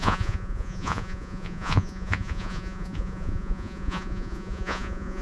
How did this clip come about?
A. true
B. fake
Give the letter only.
B